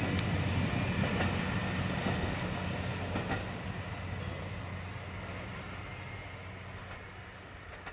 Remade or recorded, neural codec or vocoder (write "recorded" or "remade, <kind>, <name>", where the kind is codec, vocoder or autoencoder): recorded